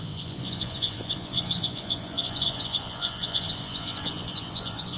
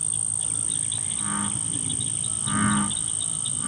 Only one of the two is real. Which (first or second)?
second